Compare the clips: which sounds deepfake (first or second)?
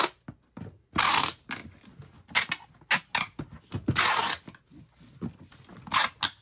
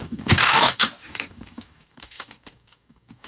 second